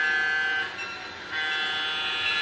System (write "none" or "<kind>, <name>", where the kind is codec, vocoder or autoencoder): none